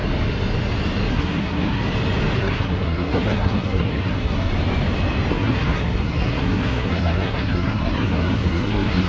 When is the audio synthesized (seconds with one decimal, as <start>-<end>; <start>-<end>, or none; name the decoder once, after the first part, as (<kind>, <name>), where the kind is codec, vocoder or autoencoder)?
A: 1.1-1.8 (codec, SNAC); 2.4-4.5; 5.3-9.1